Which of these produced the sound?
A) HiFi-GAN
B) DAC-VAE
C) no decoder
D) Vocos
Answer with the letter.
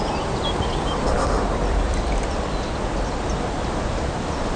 C